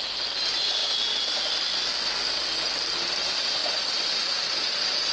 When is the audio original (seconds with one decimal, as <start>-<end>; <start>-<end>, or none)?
0.0-3.6

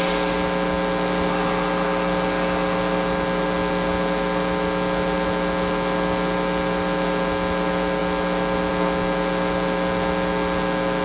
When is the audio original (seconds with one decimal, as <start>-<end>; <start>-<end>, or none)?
0.0-11.0

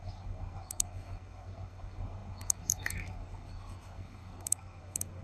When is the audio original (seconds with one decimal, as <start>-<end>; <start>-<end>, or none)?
none

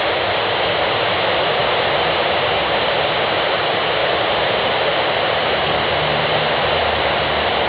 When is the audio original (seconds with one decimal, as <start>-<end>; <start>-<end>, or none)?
0.0-1.6; 3.6-4.0

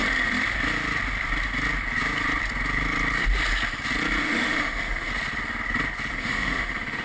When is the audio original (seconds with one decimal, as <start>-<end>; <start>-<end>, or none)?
0.0-4.2; 5.1-6.1

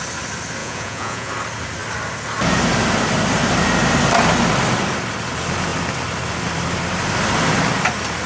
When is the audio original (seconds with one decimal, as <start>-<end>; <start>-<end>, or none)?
0.0-0.6; 1.3-8.3

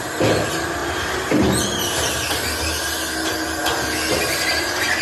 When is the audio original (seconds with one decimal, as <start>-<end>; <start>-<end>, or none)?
0.0-5.0